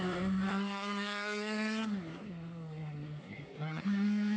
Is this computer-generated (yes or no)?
yes